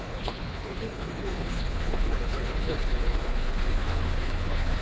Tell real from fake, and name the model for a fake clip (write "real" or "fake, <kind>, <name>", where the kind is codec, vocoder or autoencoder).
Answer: fake, codec, HILCodec